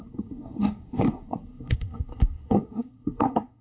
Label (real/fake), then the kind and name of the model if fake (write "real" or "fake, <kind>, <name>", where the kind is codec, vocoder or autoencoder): fake, codec, SNAC